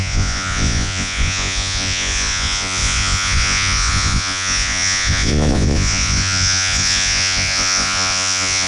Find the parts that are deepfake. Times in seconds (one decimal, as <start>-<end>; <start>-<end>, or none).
0.0-8.7